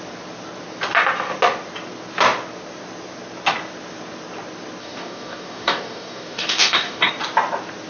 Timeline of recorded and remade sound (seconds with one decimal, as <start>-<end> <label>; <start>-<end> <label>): 0.0-4.8 recorded; 4.8-7.1 remade; 7.1-7.9 recorded